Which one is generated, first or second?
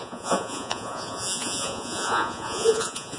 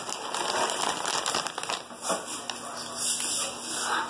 first